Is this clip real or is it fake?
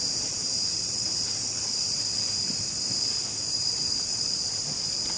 real